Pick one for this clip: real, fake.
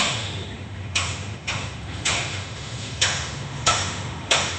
fake